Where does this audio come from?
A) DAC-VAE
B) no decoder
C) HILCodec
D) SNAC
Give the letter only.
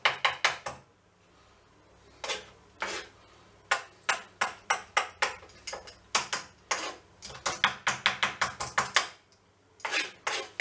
B